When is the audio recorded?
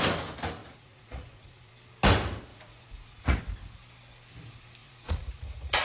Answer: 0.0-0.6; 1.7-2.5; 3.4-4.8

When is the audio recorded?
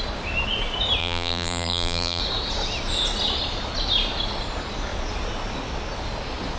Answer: 0.0-1.0; 2.2-6.6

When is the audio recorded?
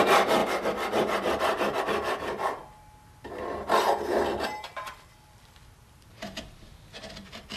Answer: 0.4-1.8; 2.6-4.7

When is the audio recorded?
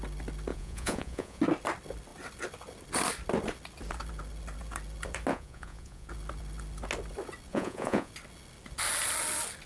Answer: 0.0-0.5; 1.4-5.3; 6.1-7.5; 8.1-9.7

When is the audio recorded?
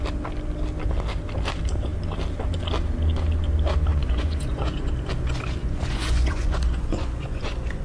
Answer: 0.0-3.9; 4.9-5.6